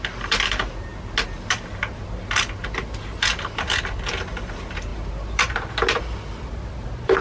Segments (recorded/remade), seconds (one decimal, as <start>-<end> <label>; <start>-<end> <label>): 0.0-4.9 recorded; 4.9-5.7 remade; 5.7-7.2 recorded